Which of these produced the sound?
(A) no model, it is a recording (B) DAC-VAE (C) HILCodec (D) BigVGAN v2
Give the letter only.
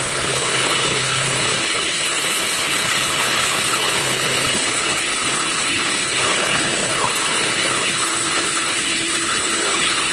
C